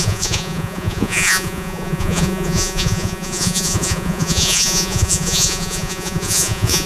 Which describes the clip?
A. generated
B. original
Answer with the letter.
A